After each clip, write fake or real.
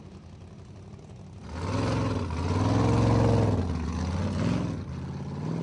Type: real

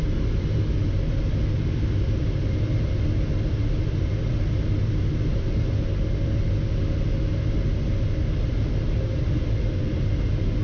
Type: real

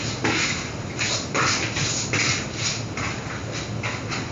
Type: real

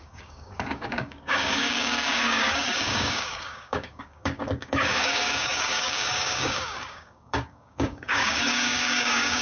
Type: fake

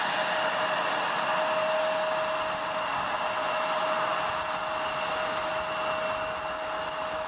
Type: real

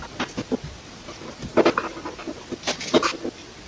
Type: real